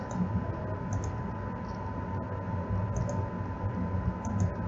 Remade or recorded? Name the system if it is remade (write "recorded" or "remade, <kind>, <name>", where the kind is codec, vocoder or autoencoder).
recorded